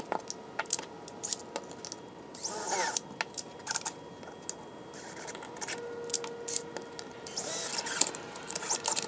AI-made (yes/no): no